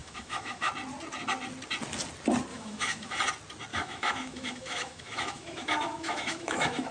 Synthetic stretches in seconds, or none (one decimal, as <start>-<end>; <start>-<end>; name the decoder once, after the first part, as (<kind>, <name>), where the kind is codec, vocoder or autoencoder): 0.0-0.7 (autoencoder, DAC-VAE); 2.5-3.2; 3.7-6.9